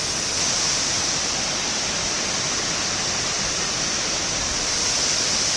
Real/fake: real